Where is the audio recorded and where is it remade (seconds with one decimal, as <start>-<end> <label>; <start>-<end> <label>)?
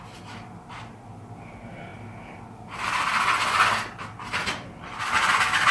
0.0-5.7 recorded